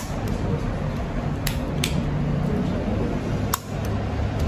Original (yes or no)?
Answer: yes